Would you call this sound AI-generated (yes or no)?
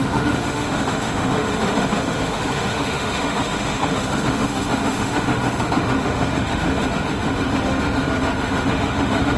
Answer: yes